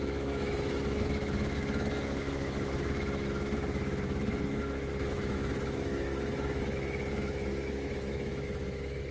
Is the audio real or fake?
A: fake